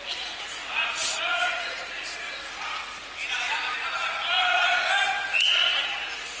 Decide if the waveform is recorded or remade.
remade